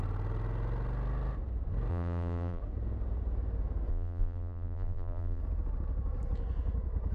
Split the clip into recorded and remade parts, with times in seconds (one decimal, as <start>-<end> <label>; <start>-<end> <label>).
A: 0.0-1.9 recorded; 1.9-2.6 remade; 2.6-3.9 recorded; 3.9-5.4 remade; 5.4-7.1 recorded